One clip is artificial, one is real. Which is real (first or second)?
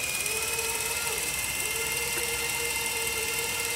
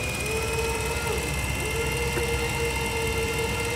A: second